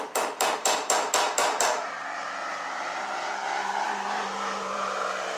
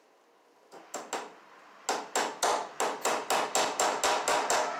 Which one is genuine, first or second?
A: second